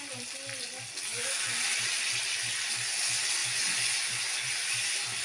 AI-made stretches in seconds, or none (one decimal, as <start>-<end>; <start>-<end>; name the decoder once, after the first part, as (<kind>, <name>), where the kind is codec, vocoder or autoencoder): 3.4-4.5 (vocoder, Vocos)